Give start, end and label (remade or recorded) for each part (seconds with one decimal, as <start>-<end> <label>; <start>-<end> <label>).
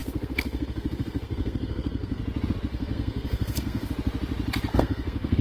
0.0-2.2 remade; 2.2-2.7 recorded; 2.7-3.9 remade; 3.9-4.7 recorded; 4.7-5.4 remade